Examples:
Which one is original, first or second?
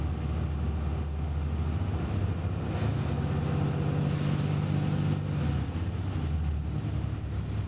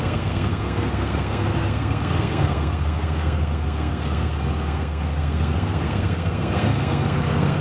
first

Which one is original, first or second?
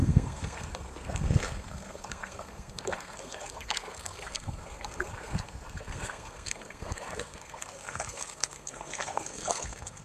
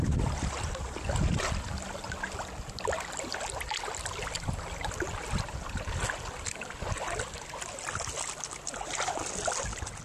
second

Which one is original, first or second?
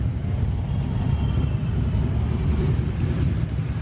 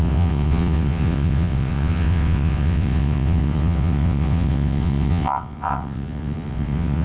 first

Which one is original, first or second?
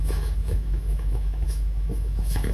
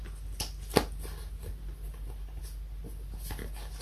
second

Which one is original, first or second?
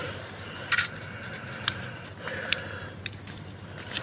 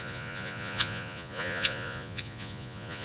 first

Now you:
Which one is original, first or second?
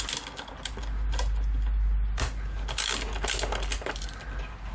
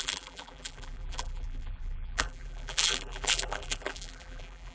first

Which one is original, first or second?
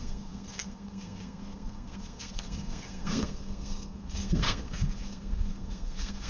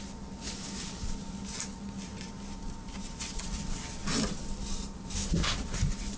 second